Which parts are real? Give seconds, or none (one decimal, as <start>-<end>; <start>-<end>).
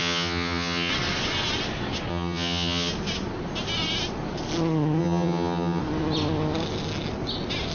0.9-2.1; 2.9-5.0; 5.8-7.7